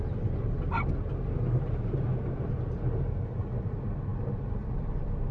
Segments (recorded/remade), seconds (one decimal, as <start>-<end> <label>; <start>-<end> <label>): 0.0-5.3 recorded